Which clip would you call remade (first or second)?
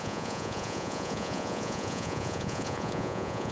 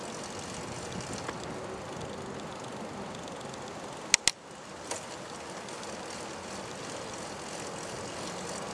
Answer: first